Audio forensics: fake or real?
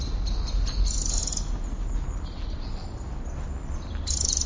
real